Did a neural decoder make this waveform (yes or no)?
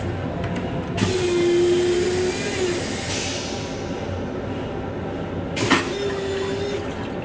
no